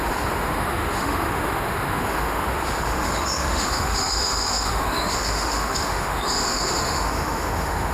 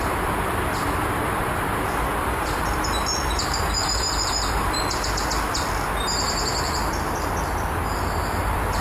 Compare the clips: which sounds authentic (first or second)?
second